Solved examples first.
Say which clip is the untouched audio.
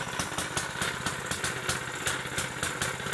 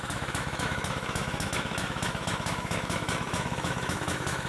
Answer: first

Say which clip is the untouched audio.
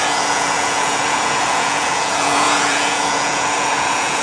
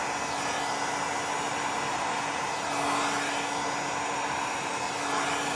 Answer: second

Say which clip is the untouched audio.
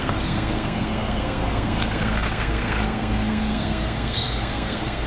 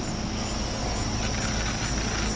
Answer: second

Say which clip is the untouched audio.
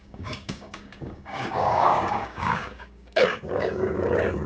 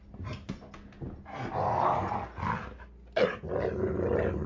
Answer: second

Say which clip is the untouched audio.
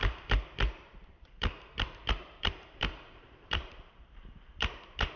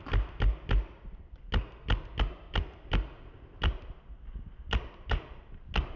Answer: second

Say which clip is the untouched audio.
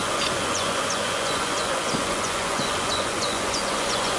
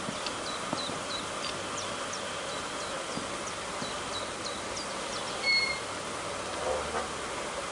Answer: second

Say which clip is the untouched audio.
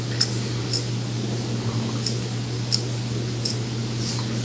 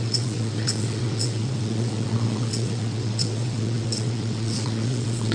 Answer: first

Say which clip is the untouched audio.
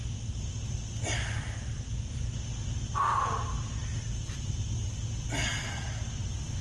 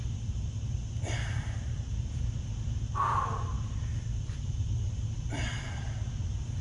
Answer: first